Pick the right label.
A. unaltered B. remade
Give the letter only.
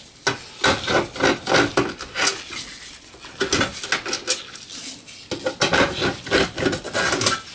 A